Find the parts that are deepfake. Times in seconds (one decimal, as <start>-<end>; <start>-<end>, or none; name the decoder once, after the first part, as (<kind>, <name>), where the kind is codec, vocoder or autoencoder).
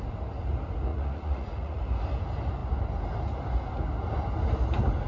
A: 0.9-1.8 (vocoder, Vocos)